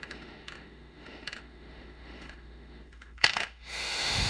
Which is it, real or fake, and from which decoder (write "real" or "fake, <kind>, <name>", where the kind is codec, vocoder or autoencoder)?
fake, autoencoder, DAC-VAE